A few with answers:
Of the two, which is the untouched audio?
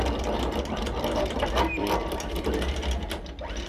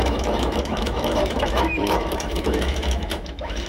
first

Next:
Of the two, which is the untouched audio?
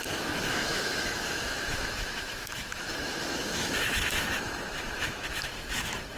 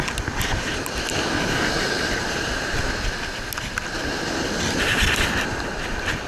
second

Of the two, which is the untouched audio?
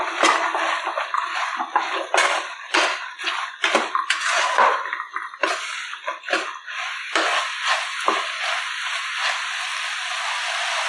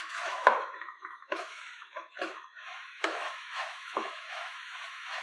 first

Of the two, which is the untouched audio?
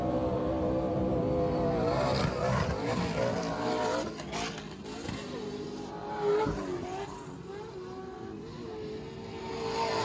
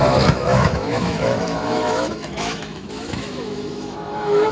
first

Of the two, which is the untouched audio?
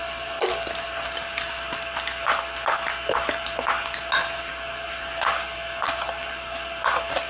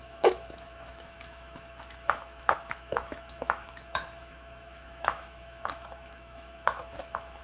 first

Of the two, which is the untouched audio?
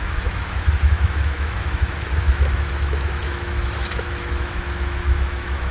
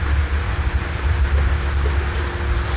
second